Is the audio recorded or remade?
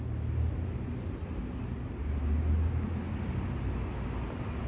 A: recorded